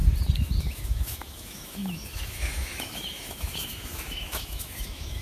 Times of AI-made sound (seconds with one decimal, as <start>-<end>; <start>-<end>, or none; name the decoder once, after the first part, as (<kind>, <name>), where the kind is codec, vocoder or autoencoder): 0.6-5.2 (autoencoder, DAC-VAE)